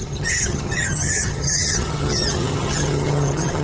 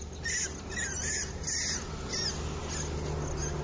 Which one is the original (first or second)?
second